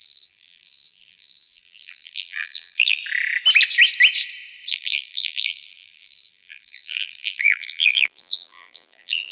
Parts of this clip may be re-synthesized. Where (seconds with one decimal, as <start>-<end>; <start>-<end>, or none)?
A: 0.0-3.0; 4.7-9.3